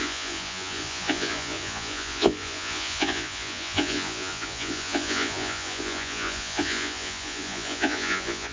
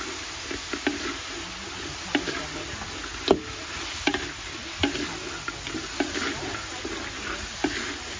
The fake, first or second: first